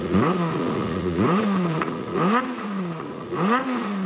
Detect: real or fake fake